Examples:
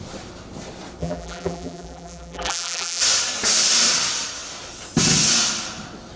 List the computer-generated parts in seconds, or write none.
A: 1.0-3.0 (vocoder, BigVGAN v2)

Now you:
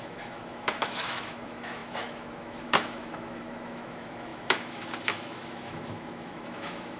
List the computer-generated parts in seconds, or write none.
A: 0.0-7.0 (autoencoder, DAC-VAE)

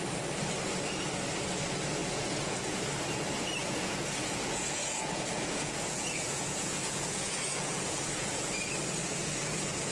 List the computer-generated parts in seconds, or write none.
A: 2.0-2.8 (vocoder, Vocos); 3.6-8.5; 9.0-9.9

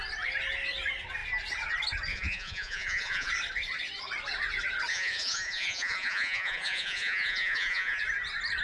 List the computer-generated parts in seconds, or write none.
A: 2.1-3.3 (vocoder, Vocos); 4.9-8.0

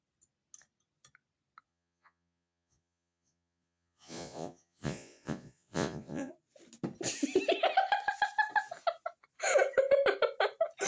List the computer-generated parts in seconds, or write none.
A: 1.7-6.3 (vocoder, Vocos)

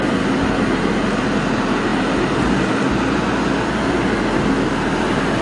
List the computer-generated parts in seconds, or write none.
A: none

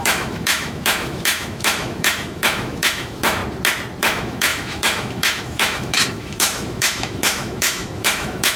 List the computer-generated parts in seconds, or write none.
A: 0.0-3.4 (autoencoder, DAC-VAE); 4.0-8.6

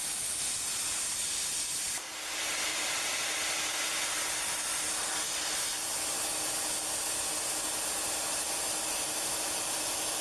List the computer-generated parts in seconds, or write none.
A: 2.7-3.4 (vocoder, BigVGAN v2)